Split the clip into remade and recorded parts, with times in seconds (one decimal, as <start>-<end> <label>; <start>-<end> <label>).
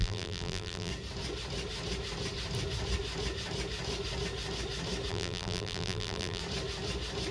0.0-0.9 remade; 0.9-5.1 recorded; 5.1-6.4 remade; 6.4-7.3 recorded